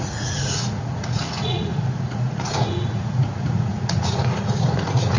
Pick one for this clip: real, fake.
fake